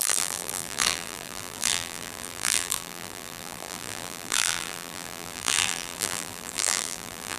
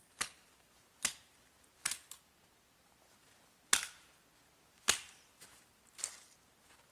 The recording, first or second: second